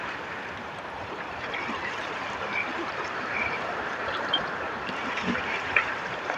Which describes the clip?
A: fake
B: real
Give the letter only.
A